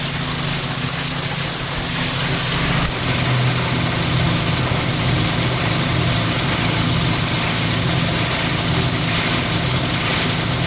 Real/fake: real